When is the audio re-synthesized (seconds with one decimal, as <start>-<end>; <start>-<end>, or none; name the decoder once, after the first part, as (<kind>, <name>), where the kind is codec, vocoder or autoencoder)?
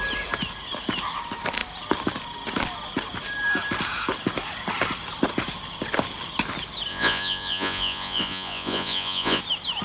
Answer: 6.9-9.4 (vocoder, Vocos)